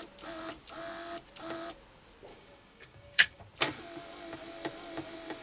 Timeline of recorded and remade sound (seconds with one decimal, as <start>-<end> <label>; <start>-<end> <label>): 0.0-2.3 recorded; 2.3-3.4 remade; 3.4-5.4 recorded